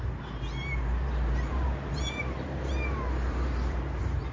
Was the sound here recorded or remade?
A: remade